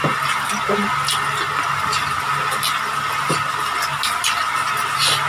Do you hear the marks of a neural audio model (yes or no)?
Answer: no